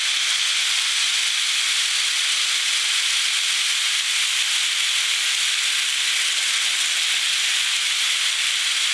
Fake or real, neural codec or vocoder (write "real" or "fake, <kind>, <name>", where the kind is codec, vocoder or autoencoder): real